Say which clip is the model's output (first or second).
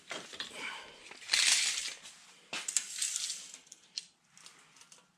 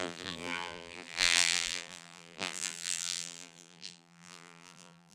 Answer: second